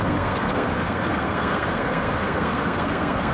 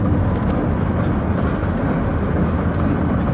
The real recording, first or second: second